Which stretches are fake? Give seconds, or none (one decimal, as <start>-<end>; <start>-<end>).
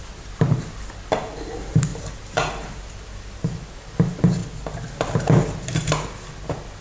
1.9-3.7; 4.4-4.9